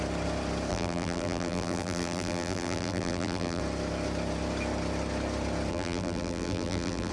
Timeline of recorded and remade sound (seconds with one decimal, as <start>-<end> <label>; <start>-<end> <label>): 0.0-0.7 recorded; 0.7-3.6 remade; 3.6-5.7 recorded; 5.7-7.1 remade